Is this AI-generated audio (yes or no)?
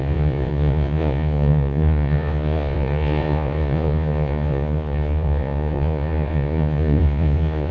yes